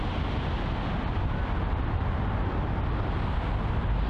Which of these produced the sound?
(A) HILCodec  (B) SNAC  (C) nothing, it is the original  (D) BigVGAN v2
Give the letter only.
C